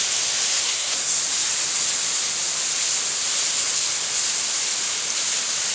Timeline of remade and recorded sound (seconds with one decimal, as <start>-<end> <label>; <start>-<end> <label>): 0.0-0.5 recorded; 0.5-1.2 remade; 1.2-5.7 recorded